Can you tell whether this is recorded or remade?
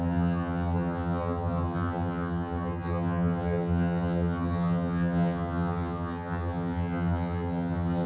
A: remade